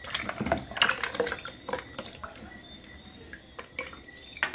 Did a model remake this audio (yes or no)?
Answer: no